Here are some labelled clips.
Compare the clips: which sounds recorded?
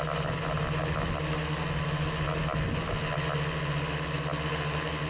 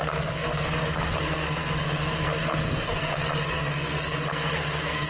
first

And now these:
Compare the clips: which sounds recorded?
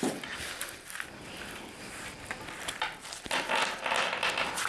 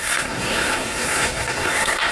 first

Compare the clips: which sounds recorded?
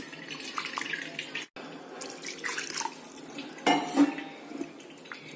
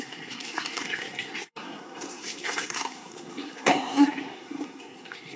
first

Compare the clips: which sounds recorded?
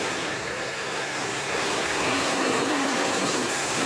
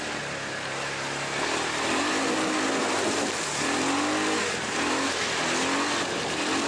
second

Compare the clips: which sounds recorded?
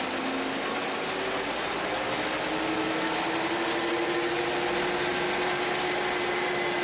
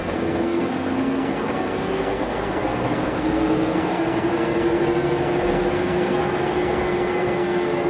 first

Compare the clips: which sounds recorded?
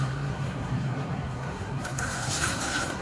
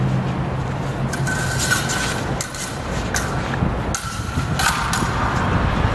second